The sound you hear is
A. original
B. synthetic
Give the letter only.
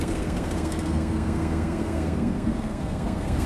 B